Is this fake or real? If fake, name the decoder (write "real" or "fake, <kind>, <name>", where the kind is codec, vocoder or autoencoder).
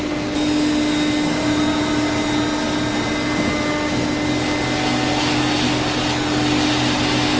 real